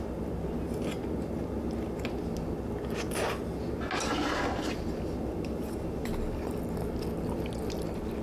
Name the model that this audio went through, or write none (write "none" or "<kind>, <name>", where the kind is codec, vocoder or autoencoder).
none